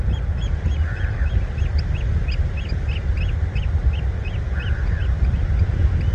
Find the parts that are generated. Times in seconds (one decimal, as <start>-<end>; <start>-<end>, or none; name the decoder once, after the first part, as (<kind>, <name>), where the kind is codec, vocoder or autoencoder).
none